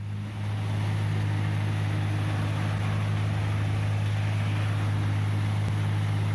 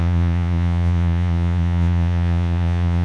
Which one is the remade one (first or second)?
second